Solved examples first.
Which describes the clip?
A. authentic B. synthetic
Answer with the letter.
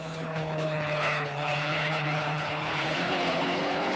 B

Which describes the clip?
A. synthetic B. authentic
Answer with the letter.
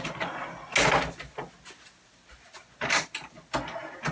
B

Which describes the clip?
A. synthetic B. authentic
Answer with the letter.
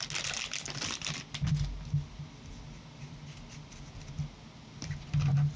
B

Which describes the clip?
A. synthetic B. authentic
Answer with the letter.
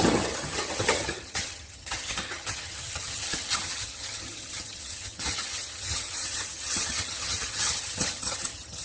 A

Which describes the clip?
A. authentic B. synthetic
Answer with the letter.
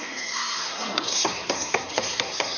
B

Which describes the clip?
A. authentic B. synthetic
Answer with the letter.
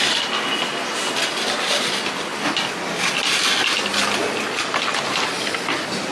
A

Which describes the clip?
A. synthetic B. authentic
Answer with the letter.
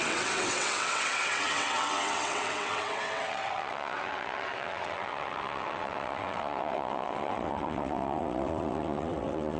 A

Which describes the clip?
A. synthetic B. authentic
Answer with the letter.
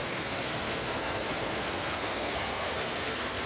A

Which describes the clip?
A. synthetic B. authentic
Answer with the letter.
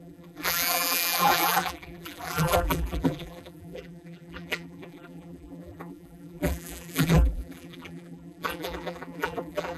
A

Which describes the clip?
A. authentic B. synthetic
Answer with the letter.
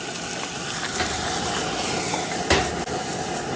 A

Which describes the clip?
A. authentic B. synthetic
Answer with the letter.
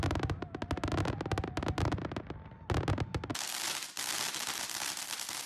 A